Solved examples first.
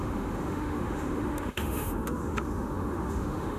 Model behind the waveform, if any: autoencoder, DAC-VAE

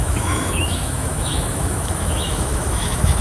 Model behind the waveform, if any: autoencoder, DAC-VAE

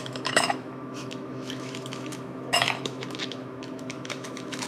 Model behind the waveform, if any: autoencoder, DAC-VAE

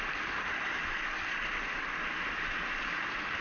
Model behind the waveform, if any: none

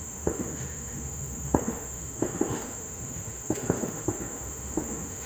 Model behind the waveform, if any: autoencoder, DAC-VAE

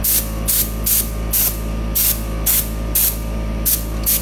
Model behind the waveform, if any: none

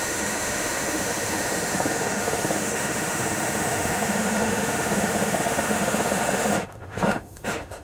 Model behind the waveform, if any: autoencoder, DAC-VAE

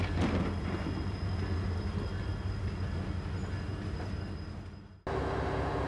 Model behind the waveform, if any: none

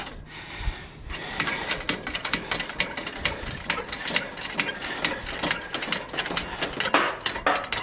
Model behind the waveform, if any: none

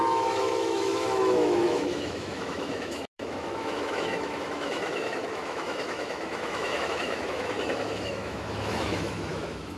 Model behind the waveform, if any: autoencoder, DAC-VAE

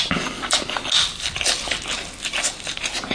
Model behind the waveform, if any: none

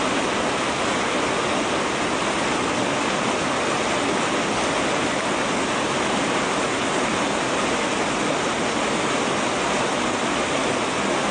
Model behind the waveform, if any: none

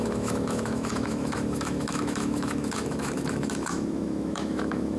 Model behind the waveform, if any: autoencoder, DAC-VAE